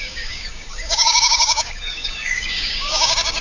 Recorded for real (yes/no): no